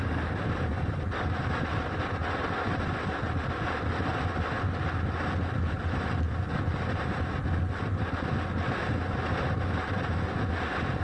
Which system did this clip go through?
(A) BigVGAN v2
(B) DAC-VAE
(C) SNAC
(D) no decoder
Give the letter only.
D